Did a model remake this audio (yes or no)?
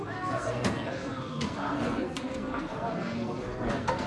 yes